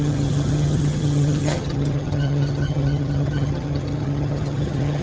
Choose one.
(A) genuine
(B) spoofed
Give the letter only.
B